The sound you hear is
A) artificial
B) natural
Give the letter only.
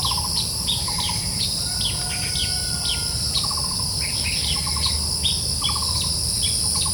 B